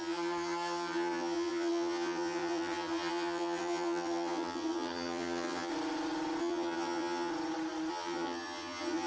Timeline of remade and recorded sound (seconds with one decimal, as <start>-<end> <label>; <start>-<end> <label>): 0.0-5.7 remade; 5.7-6.4 recorded; 6.4-7.3 remade; 7.3-7.9 recorded; 7.9-9.1 remade